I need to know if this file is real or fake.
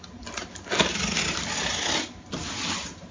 real